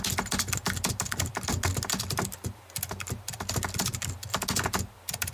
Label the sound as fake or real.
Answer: real